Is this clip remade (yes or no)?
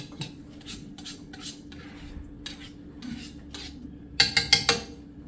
no